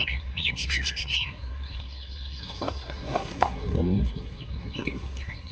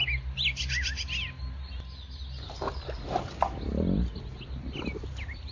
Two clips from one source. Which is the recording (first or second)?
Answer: second